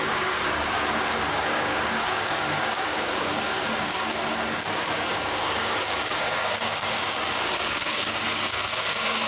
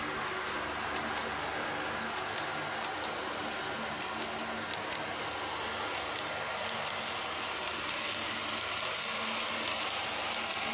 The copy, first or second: first